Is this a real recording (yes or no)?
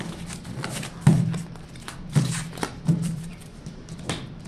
no